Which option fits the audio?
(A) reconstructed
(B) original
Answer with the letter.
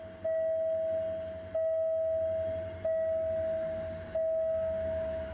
B